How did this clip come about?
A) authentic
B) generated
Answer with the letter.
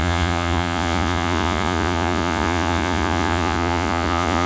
B